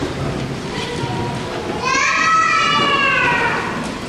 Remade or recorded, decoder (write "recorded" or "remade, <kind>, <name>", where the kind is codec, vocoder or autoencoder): recorded